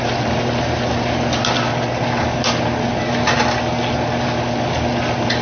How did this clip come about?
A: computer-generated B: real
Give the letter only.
B